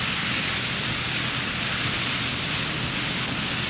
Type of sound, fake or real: real